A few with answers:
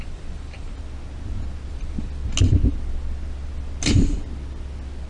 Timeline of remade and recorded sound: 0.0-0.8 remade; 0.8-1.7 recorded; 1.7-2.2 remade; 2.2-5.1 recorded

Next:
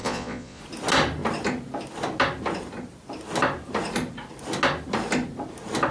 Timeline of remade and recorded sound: 0.0-0.6 remade; 0.6-5.9 recorded

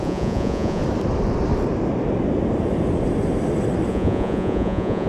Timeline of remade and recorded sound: 0.0-0.8 remade; 0.8-3.9 recorded; 3.9-5.1 remade

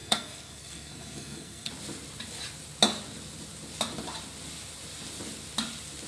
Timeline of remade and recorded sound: 0.0-1.7 remade; 1.7-6.1 recorded